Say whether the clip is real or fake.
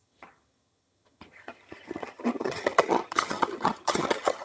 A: fake